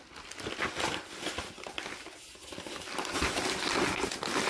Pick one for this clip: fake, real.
real